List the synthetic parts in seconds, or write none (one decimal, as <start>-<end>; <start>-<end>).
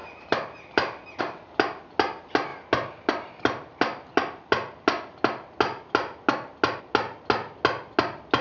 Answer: 0.0-1.2